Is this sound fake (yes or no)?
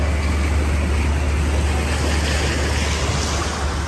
no